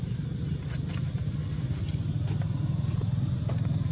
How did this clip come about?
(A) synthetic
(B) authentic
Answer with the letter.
B